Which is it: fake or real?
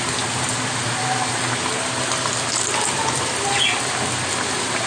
real